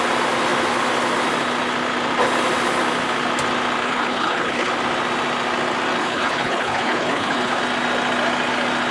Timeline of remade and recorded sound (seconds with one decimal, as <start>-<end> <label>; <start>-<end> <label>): 0.0-3.8 recorded; 3.8-4.7 remade; 4.7-6.0 recorded; 6.0-7.6 remade; 7.6-8.9 recorded